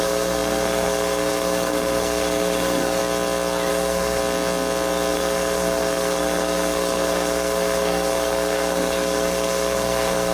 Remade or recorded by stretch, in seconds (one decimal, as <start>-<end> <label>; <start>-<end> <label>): 0.0-3.0 remade; 3.0-3.7 recorded; 3.7-4.2 remade; 4.2-5.1 recorded; 5.1-10.3 remade